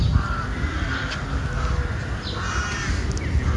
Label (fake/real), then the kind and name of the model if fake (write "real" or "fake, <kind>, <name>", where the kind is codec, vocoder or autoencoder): real